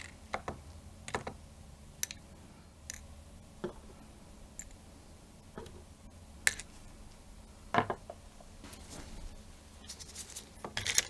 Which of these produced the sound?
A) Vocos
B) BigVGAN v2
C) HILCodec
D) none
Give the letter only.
D